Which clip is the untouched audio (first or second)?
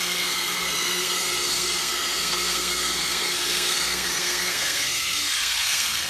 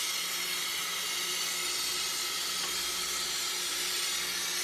second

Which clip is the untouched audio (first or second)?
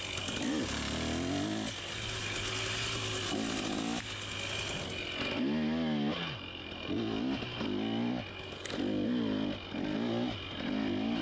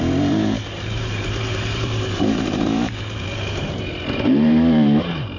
first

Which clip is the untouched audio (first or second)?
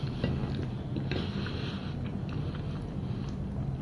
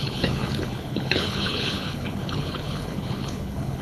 first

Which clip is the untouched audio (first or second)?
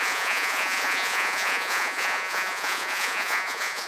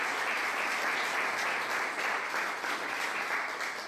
second